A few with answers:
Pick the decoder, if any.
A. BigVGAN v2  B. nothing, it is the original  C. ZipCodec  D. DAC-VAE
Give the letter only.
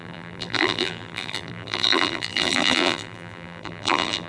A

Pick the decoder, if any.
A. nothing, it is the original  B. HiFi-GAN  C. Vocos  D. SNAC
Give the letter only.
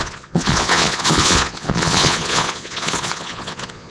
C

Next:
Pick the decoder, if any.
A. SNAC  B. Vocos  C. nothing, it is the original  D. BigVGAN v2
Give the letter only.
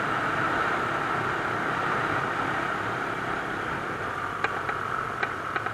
C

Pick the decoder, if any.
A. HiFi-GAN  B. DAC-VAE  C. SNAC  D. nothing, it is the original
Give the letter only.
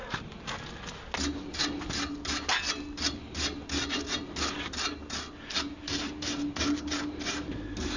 D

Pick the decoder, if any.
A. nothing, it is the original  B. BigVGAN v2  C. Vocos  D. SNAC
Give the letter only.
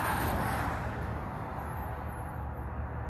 A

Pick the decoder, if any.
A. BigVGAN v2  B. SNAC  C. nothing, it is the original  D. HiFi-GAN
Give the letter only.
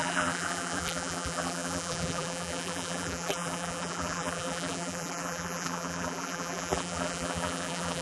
A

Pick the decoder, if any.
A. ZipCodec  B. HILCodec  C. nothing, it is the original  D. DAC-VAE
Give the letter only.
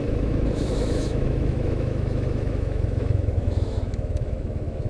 D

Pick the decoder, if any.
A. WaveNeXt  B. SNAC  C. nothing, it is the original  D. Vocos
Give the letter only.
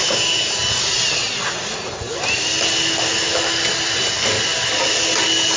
C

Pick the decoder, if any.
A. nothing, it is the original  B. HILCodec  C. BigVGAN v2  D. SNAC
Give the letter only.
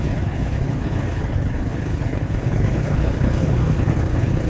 B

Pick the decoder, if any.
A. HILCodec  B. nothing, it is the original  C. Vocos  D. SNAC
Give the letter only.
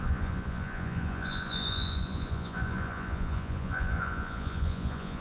C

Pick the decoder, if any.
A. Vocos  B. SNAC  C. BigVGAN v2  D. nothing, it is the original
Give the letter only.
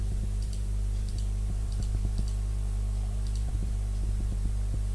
C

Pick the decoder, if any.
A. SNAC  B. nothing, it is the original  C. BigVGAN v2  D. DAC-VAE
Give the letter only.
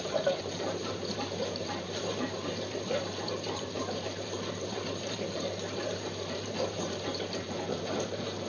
C